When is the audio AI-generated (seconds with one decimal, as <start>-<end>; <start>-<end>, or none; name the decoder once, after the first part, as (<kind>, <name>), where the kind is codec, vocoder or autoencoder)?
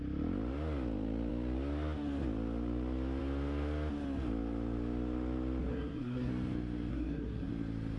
5.6-6.3 (codec, SNAC); 6.9-7.5